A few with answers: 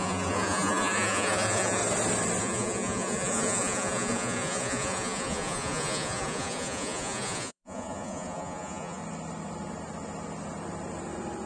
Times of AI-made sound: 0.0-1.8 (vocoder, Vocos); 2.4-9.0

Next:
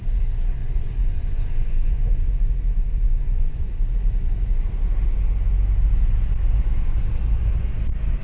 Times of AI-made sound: 0.6-2.3 (vocoder, Vocos); 3.2-3.7